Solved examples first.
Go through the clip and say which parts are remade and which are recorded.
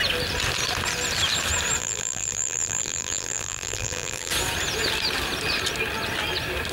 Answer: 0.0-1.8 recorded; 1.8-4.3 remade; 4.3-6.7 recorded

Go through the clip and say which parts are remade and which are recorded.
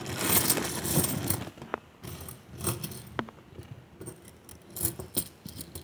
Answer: 0.0-5.8 recorded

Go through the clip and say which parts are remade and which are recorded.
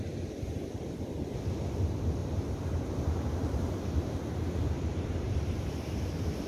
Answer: 0.0-2.2 recorded; 2.2-6.1 remade; 6.1-6.5 recorded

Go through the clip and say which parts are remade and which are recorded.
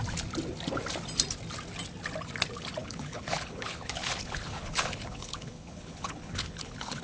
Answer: 0.0-2.8 recorded; 2.8-7.0 remade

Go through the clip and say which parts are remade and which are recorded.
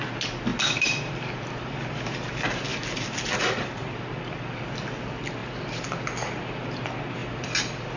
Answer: 0.0-0.5 recorded; 0.5-2.3 remade; 2.3-2.7 recorded; 2.7-4.6 remade; 4.6-5.4 recorded; 5.4-6.0 remade; 6.0-7.2 recorded; 7.2-8.0 remade